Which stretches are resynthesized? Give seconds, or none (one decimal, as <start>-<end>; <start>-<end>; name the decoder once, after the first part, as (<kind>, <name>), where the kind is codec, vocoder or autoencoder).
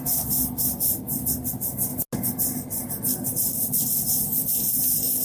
none